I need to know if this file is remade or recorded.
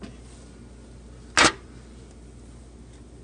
recorded